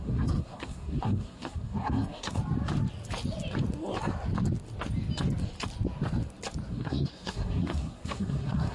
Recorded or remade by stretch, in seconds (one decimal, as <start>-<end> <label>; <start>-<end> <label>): 0.0-2.4 remade; 2.4-6.7 recorded; 6.7-8.7 remade